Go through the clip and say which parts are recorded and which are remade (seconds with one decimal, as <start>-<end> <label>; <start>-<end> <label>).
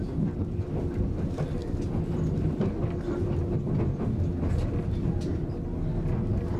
0.0-1.6 recorded; 1.6-2.6 remade; 2.6-6.6 recorded